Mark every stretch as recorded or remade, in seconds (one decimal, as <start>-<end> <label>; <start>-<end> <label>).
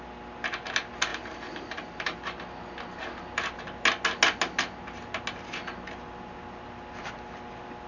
0.0-1.1 recorded; 1.1-2.4 remade; 2.4-7.9 recorded